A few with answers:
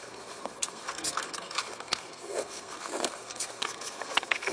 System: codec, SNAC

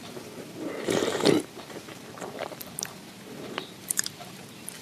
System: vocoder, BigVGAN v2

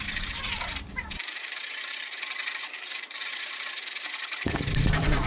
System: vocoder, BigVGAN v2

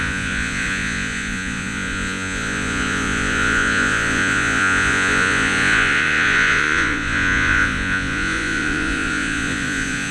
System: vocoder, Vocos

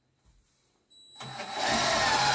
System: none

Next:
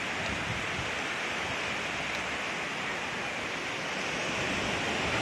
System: none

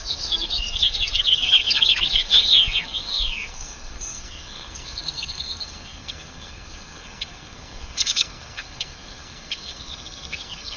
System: codec, SNAC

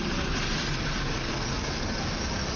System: none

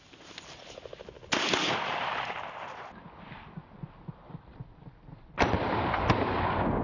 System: none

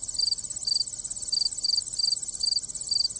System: none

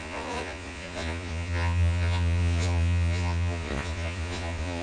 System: vocoder, Vocos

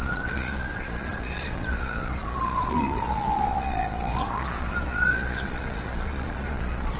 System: vocoder, Vocos